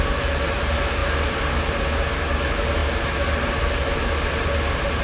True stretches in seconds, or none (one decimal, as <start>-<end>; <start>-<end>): 0.0-5.0